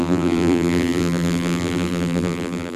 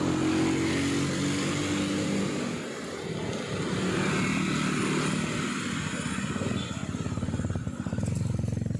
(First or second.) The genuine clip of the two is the second